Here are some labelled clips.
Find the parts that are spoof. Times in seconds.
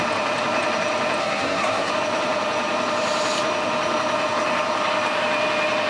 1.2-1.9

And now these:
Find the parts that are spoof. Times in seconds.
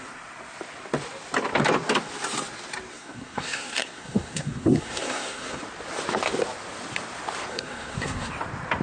2.9-5.6; 7.5-8.3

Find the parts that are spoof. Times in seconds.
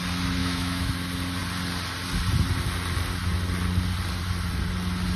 0.4-0.9